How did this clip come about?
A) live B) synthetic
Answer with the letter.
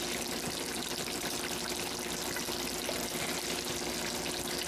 A